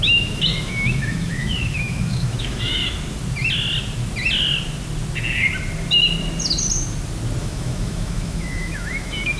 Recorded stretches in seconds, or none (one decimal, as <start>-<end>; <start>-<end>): 2.8-7.4